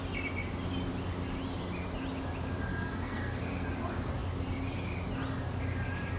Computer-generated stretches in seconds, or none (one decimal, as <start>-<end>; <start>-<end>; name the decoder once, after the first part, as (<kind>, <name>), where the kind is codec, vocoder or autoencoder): 2.7-3.7 (codec, SNAC)